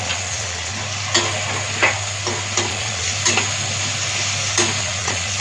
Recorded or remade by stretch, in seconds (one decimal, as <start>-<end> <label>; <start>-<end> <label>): 0.0-0.7 remade; 0.7-2.7 recorded; 2.7-3.1 remade; 3.1-4.8 recorded; 4.8-5.4 remade